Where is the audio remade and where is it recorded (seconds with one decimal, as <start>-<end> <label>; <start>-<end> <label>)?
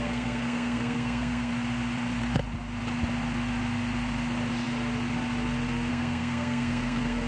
0.0-1.5 remade; 1.5-5.9 recorded; 5.9-7.3 remade